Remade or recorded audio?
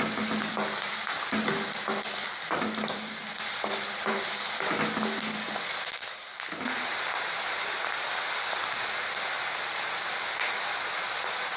recorded